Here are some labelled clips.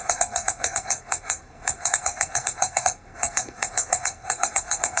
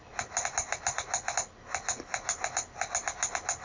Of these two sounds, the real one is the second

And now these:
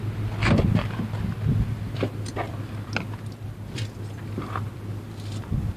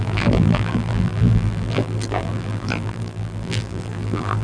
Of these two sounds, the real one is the first